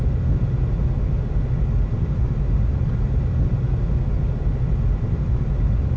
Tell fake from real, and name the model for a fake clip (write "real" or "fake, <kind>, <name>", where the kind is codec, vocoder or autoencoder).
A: real